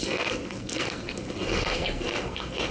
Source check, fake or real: fake